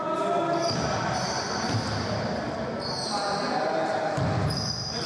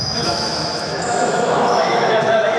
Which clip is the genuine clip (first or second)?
first